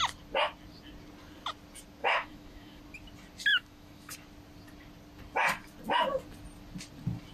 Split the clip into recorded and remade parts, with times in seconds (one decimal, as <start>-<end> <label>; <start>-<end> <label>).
0.0-2.0 recorded; 2.0-2.8 remade; 2.8-3.5 recorded; 3.5-4.1 remade; 4.1-7.3 recorded